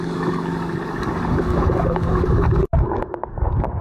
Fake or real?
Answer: fake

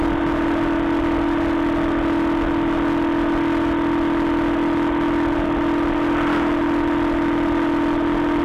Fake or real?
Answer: real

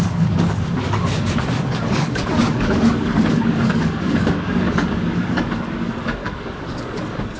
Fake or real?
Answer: fake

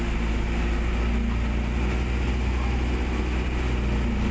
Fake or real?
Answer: real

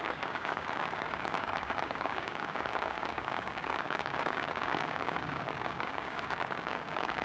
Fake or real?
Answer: fake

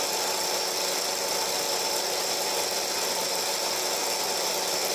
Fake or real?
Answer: real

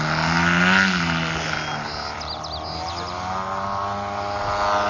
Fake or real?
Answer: real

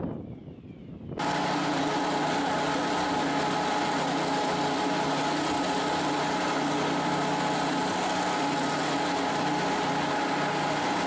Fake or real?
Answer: real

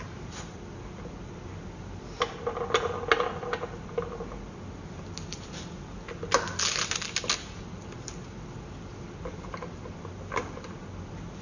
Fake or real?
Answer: real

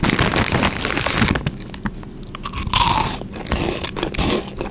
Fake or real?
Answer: real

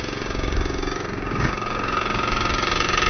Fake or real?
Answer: fake